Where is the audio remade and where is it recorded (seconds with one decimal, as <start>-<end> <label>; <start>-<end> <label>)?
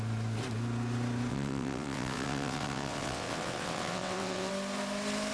0.0-1.3 recorded; 1.3-4.5 remade; 4.5-5.3 recorded